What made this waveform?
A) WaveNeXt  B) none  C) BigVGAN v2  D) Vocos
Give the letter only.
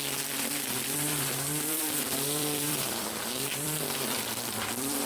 C